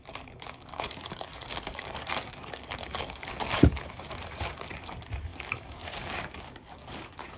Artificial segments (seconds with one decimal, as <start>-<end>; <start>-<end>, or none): 0.0-7.4